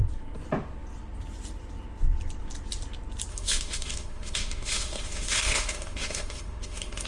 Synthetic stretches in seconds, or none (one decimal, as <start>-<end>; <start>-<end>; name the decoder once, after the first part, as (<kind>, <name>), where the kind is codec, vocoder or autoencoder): 3.3-7.1 (autoencoder, DAC-VAE)